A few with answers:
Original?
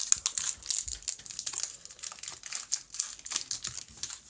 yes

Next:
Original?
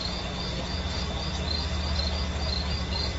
yes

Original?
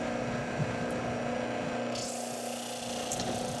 yes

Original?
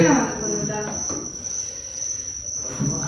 yes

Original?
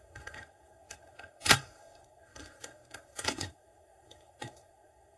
no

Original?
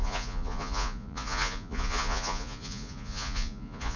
no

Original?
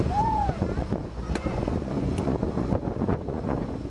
no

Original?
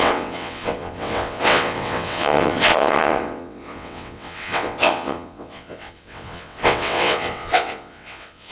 no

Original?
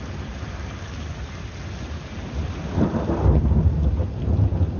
yes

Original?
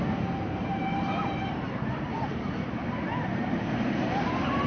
no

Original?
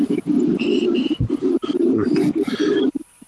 no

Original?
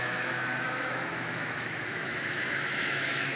no